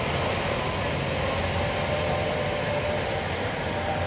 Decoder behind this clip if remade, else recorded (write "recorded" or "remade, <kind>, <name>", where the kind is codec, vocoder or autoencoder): recorded